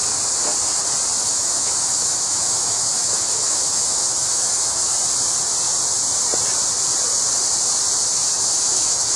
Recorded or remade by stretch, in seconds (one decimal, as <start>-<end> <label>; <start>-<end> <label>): 0.0-1.2 recorded; 1.2-4.9 remade; 4.9-8.4 recorded; 8.4-9.2 remade